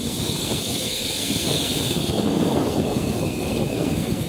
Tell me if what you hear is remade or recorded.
remade